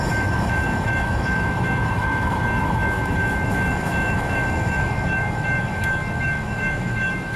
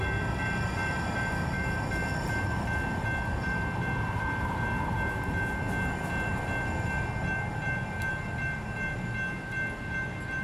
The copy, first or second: first